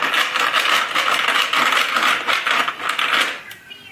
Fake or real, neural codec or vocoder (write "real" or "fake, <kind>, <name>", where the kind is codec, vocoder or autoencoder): real